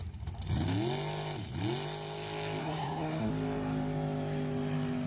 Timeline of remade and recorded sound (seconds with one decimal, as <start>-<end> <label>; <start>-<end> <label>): 0.0-2.6 recorded; 2.6-3.3 remade; 3.3-5.1 recorded